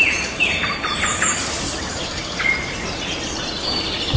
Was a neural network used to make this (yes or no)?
no